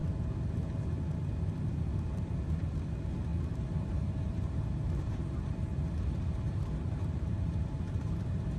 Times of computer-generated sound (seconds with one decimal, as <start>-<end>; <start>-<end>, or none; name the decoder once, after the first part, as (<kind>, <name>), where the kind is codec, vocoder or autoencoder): 3.3-8.6 (vocoder, BigVGAN v2)